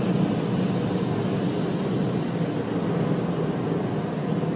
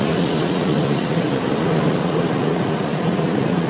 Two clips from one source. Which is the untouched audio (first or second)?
first